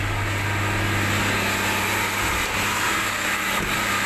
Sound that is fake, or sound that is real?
real